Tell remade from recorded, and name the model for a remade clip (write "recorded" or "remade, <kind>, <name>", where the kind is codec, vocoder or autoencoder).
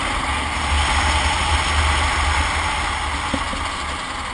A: recorded